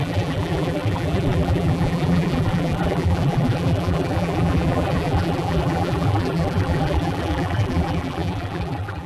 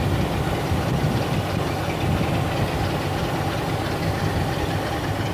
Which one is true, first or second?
second